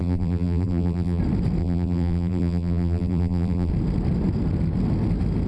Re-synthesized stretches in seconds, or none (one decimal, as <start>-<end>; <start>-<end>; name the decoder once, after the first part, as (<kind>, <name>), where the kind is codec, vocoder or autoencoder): 0.0-1.2 (vocoder, BigVGAN v2); 1.6-3.7

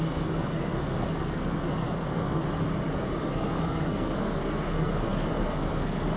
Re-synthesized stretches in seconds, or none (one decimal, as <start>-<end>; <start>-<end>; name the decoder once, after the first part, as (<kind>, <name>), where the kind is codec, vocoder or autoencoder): 0.0-2.4 (codec, SNAC); 3.2-6.2

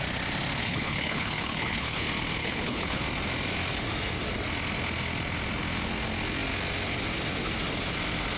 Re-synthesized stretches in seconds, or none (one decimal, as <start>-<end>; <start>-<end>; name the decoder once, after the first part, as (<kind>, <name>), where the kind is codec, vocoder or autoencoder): 0.6-2.0 (codec, HILCodec); 2.4-3.0

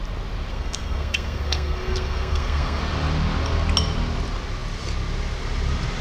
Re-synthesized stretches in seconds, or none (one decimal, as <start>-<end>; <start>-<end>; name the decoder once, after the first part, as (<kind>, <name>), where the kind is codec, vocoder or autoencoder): 0.5-2.8 (codec, SNAC)